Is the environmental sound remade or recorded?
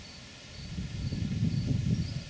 recorded